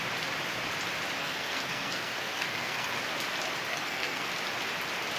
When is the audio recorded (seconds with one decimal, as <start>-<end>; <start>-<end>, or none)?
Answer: 0.0-1.2; 3.0-3.7; 4.3-5.2